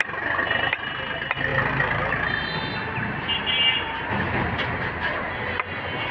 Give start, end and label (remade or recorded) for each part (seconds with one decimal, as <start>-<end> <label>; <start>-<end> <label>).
0.0-6.1 recorded